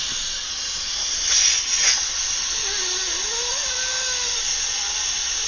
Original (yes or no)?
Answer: yes